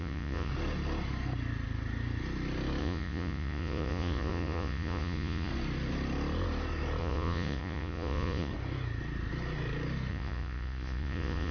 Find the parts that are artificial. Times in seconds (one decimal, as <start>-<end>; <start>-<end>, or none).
0.0-0.5; 2.8-5.5; 7.0-8.5; 10.1-11.5